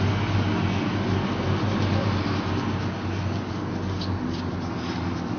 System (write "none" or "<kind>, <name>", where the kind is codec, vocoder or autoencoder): none